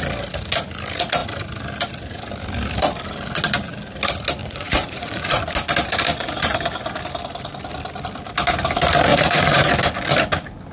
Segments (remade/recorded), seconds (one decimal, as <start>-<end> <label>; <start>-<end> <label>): 0.0-4.4 recorded; 4.4-5.4 remade; 5.4-9.1 recorded; 9.1-9.7 remade; 9.7-10.7 recorded